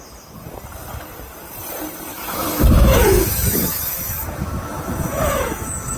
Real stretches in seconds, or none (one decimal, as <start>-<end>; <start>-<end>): 0.0-2.1